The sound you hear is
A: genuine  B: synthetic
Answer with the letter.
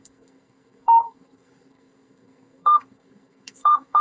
B